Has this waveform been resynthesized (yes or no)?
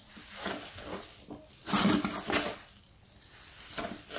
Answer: no